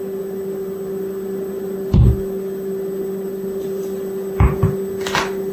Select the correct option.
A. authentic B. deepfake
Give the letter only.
A